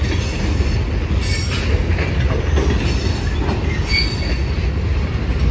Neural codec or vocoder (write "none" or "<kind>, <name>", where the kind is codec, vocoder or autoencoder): none